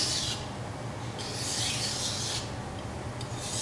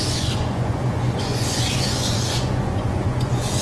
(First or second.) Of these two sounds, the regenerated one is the second